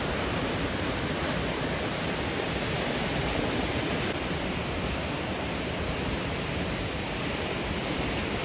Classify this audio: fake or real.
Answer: real